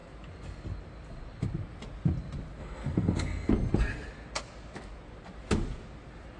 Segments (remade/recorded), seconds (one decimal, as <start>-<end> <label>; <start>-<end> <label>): 0.0-2.6 recorded; 2.6-3.5 remade; 3.5-6.4 recorded